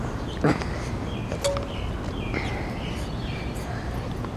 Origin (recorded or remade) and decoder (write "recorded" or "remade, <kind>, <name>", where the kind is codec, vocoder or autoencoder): recorded